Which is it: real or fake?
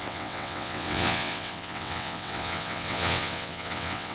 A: fake